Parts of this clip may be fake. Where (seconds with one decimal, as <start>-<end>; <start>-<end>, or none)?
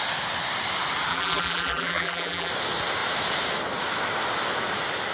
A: 1.1-2.5